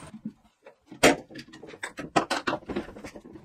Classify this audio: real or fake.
real